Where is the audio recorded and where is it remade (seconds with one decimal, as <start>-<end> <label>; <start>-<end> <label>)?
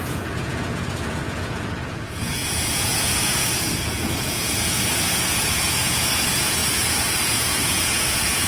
0.0-8.5 remade